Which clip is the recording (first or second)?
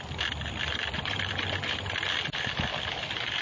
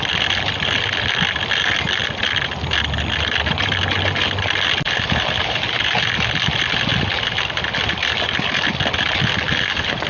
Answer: second